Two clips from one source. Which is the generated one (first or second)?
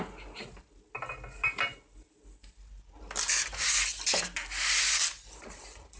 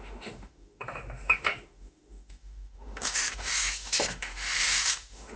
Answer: second